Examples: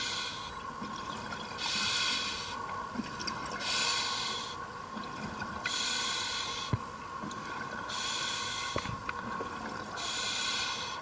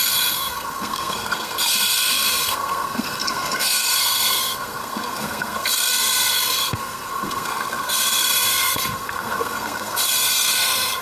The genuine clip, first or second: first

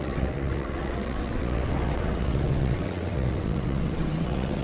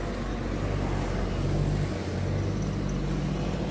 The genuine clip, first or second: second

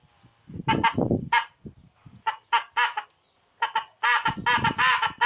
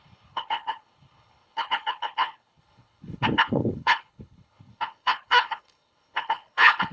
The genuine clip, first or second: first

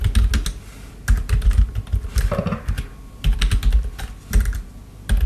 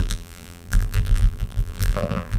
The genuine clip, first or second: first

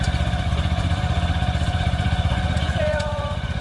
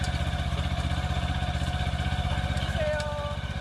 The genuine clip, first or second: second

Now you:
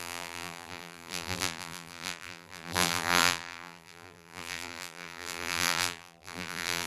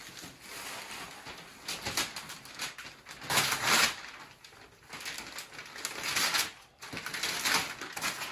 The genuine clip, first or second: second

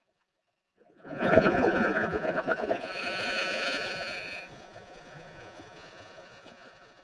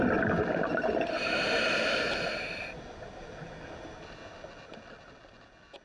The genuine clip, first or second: second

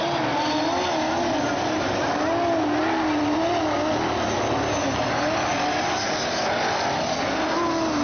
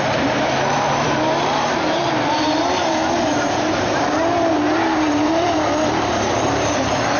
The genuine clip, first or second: first